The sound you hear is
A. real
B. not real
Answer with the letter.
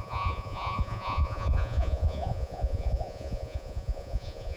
B